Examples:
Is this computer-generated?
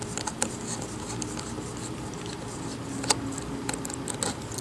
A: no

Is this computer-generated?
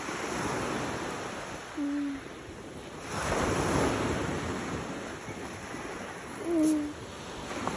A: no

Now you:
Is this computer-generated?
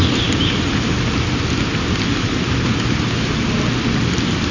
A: no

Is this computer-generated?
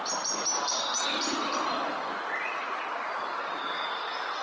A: no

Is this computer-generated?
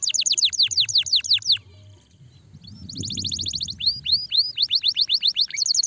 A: no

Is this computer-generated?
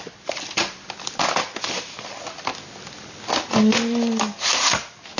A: no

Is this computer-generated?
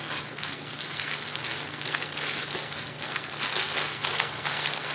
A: yes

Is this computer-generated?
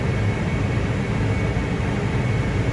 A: no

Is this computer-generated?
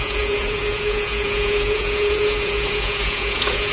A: yes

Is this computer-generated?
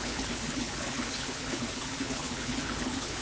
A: yes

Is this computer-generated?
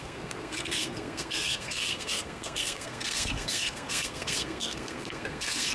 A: yes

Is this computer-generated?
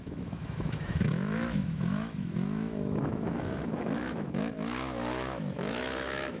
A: yes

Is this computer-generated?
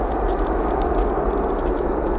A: no